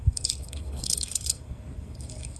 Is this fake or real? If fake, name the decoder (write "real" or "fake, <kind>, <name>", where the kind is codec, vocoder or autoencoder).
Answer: fake, codec, SNAC